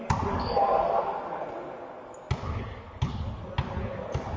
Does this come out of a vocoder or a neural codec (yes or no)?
no